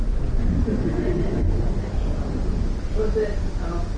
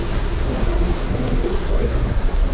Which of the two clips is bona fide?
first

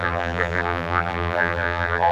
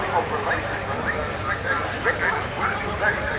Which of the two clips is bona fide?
second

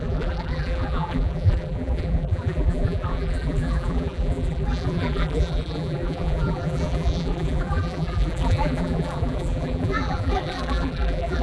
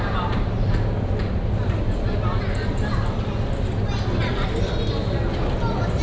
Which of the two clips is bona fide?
second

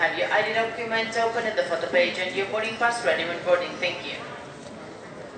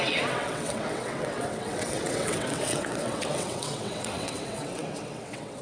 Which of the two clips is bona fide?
first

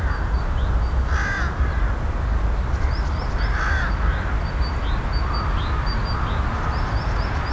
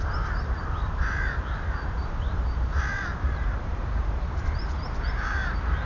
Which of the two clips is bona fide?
first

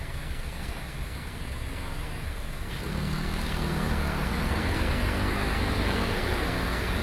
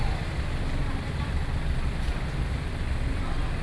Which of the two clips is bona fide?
second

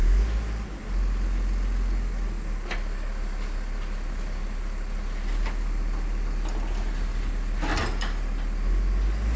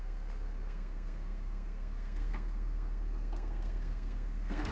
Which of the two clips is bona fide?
first